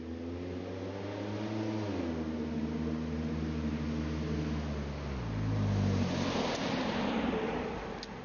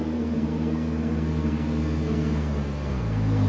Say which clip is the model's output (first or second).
second